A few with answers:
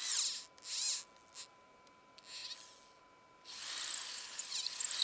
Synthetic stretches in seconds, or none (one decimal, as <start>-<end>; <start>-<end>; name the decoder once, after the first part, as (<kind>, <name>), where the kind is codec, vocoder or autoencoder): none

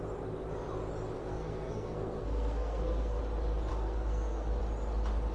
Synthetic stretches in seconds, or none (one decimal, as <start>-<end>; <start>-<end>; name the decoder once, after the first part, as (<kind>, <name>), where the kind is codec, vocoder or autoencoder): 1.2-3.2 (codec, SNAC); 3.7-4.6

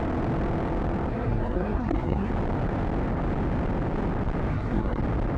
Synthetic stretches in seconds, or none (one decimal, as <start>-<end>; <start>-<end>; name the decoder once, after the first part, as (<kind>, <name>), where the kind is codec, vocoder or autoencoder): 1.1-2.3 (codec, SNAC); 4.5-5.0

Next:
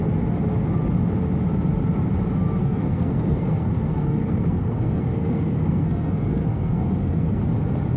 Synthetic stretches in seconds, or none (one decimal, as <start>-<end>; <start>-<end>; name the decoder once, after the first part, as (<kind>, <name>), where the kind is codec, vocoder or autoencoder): 2.6-7.4 (codec, SNAC)

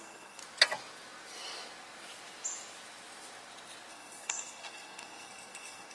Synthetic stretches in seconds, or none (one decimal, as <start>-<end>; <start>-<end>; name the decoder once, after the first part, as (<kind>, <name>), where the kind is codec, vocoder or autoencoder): 0.0-0.4 (codec, SNAC); 3.9-5.9

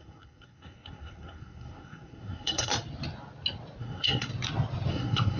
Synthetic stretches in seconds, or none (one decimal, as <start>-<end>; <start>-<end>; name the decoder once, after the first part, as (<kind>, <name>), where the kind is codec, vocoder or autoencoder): 0.0-2.7 (codec, SNAC); 3.8-4.3; 4.9-5.4